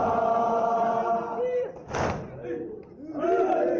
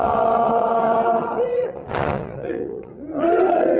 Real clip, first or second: first